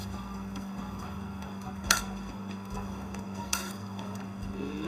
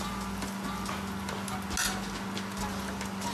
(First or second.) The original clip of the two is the second